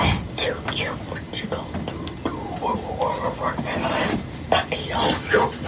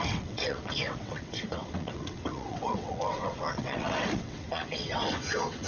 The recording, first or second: first